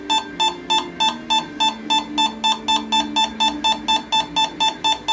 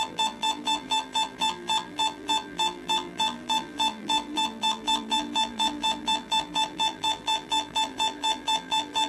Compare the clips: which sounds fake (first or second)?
second